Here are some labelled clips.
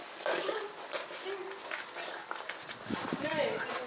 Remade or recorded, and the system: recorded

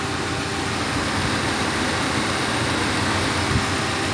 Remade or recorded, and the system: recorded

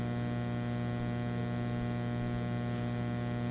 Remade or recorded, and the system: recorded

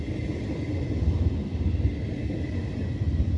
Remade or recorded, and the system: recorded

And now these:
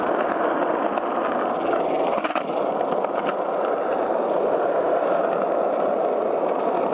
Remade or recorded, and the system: recorded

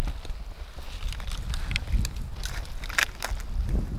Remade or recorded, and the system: recorded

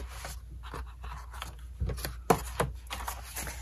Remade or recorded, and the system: recorded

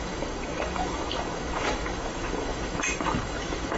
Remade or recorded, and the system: remade, autoencoder, DAC-VAE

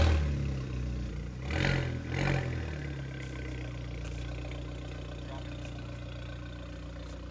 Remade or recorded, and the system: recorded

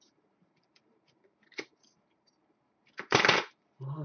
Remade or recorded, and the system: remade, vocoder, BigVGAN v2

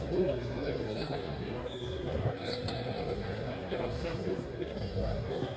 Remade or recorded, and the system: remade, codec, SNAC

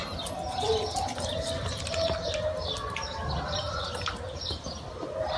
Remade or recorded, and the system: recorded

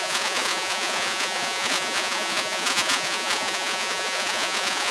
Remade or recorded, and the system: remade, vocoder, Vocos